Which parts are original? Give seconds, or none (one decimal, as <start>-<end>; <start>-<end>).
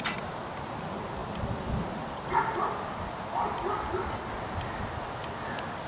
0.0-5.9